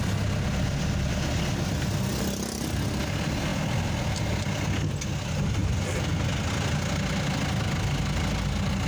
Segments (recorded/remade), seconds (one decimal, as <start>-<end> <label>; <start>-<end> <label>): 0.0-8.9 recorded